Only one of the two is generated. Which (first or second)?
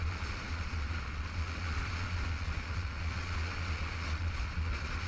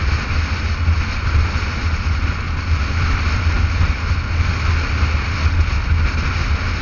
first